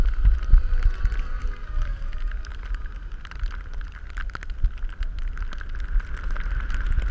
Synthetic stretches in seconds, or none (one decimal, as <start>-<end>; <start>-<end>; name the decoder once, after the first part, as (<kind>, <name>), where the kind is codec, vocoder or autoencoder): none